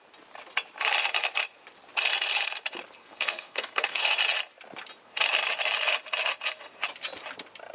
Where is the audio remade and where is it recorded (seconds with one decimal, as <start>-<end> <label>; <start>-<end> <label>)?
0.0-3.0 recorded; 3.0-4.0 remade; 4.0-7.7 recorded